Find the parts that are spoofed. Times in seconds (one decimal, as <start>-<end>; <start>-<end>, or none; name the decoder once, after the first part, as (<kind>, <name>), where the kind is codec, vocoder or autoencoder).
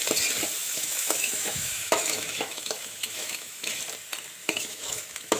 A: 0.6-3.8 (autoencoder, DAC-VAE); 4.4-5.4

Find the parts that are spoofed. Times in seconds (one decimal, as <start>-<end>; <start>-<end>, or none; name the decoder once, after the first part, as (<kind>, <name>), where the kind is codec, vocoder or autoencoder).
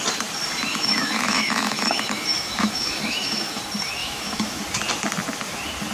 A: 0.7-3.6 (autoencoder, DAC-VAE); 4.0-4.6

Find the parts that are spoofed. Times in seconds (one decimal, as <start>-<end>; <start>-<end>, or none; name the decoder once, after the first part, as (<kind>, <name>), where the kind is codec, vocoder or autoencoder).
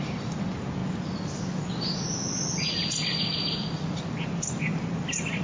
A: none